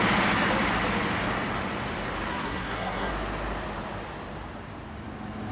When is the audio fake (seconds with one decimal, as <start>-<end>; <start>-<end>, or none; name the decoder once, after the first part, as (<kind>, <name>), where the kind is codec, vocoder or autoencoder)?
2.3-3.1 (codec, SNAC)